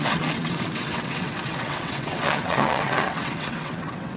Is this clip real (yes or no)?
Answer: no